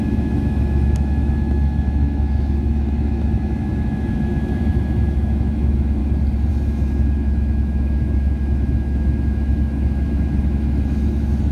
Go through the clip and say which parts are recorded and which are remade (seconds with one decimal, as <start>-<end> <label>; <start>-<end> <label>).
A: 0.0-6.0 remade; 6.0-6.5 recorded; 6.5-11.5 remade